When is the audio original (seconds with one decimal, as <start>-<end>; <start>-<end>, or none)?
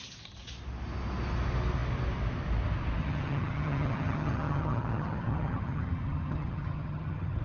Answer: 0.0-3.0